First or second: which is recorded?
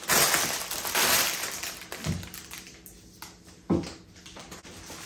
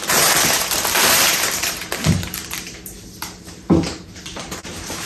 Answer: first